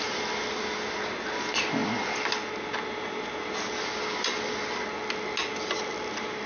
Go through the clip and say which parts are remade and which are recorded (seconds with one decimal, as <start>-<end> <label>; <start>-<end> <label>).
0.0-6.5 recorded